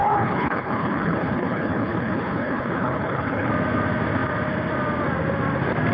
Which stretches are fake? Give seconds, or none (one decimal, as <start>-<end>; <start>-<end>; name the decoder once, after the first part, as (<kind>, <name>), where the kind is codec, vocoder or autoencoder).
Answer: 0.0-3.5 (codec, HILCodec)